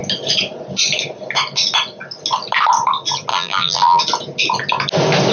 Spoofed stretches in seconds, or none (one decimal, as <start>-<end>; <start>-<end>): 3.3-4.0